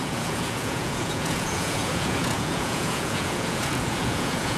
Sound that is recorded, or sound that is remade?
remade